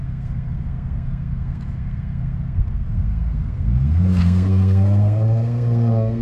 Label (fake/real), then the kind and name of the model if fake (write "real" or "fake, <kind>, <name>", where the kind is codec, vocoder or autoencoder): fake, codec, SNAC